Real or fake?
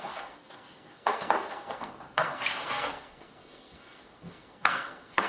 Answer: fake